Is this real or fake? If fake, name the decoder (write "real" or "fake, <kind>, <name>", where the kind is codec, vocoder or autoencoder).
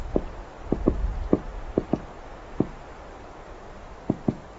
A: real